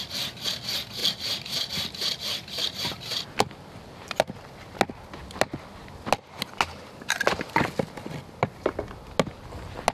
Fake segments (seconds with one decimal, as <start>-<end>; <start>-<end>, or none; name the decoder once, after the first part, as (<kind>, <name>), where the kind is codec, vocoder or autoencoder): none